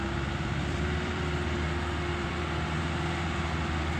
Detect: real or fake fake